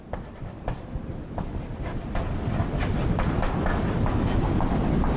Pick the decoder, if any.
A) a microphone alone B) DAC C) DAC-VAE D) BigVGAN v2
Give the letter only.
D